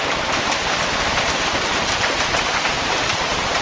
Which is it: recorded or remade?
remade